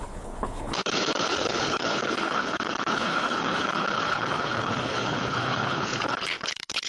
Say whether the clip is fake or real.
fake